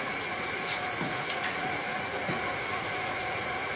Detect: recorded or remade remade